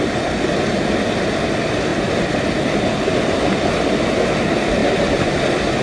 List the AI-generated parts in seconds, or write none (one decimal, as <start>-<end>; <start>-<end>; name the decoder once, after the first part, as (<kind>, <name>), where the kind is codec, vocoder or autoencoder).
none